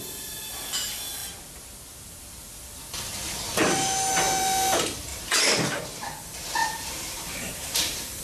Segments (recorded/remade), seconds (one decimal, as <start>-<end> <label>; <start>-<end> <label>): 0.0-5.1 recorded; 5.1-5.8 remade; 5.8-6.6 recorded; 6.6-8.2 remade